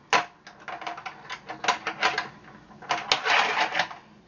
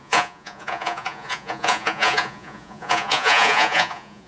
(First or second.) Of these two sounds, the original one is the first